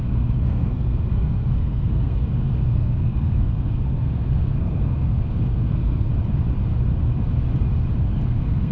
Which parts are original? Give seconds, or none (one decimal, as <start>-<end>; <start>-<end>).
6.1-8.0